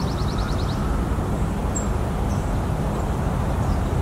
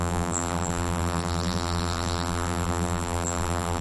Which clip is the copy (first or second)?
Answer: second